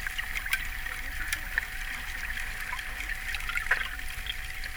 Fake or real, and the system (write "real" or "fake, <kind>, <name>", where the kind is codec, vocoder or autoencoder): fake, vocoder, BigVGAN v2